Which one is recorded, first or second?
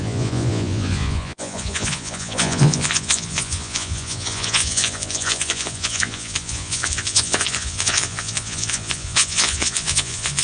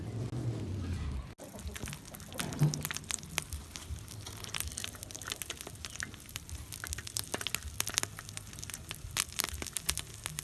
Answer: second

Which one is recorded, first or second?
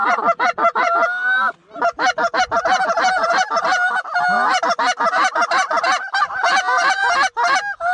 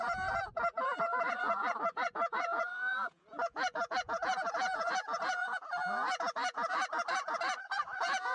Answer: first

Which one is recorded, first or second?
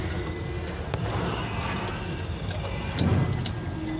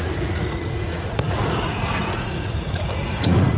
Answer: first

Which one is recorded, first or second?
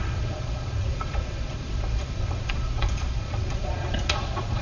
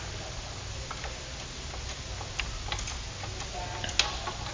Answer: second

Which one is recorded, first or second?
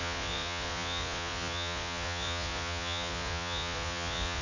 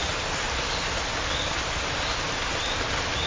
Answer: second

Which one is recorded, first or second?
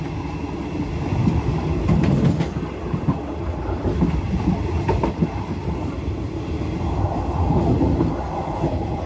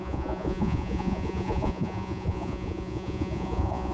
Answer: first